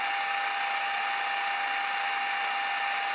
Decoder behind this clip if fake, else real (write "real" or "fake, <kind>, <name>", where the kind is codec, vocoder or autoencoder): real